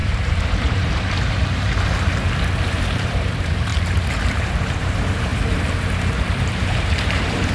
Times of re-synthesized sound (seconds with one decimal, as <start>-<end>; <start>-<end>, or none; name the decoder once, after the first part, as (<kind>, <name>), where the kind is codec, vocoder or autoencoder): 0.0-7.5 (vocoder, BigVGAN v2)

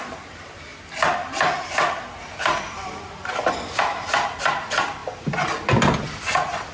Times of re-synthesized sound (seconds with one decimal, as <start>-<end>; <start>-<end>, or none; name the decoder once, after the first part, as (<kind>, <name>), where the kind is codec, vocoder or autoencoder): 0.0-5.0 (vocoder, BigVGAN v2); 5.9-6.7

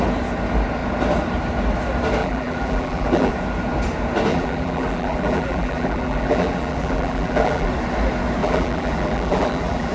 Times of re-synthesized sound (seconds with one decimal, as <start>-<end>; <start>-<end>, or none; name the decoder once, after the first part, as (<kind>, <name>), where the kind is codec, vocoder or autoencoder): 2.2-3.3 (vocoder, BigVGAN v2); 4.3-7.7; 8.4-9.9

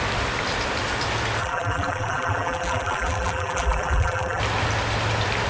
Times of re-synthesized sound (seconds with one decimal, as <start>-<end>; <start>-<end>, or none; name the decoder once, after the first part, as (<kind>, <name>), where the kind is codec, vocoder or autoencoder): 1.4-4.4 (vocoder, BigVGAN v2)

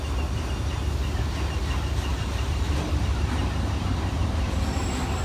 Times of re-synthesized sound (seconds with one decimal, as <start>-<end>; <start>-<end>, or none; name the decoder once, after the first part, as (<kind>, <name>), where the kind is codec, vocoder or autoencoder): 2.1-3.5 (vocoder, BigVGAN v2); 3.9-4.5